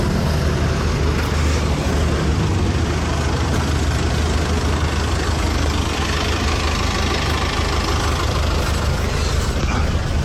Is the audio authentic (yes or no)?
yes